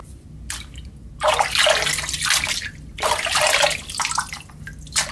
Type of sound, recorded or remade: recorded